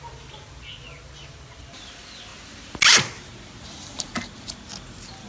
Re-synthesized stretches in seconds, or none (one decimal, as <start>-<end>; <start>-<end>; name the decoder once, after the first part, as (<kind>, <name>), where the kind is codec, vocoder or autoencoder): none

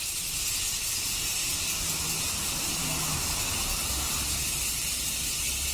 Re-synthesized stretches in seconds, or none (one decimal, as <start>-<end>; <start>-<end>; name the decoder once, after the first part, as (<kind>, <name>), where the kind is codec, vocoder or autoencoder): 2.8-3.4 (autoencoder, DAC-VAE)

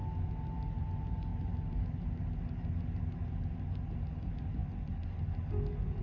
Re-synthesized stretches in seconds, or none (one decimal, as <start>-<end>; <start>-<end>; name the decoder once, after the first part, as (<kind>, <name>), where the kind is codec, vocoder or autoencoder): 1.3-1.8 (vocoder, BigVGAN v2)

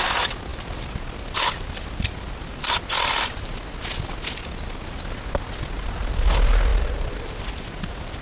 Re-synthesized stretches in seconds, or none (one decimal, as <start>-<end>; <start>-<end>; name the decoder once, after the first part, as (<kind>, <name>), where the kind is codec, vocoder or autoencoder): 6.7-7.3 (vocoder, BigVGAN v2)

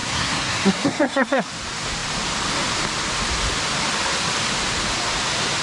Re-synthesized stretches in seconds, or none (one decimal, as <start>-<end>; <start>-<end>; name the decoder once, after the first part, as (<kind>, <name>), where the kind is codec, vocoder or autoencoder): 0.0-1.5 (codec, SNAC)